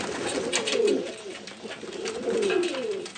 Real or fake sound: real